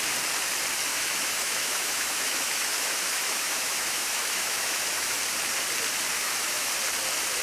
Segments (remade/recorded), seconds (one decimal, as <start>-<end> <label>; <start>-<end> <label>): 0.0-0.9 recorded; 0.9-5.2 remade; 5.2-6.1 recorded; 6.1-6.7 remade; 6.7-7.4 recorded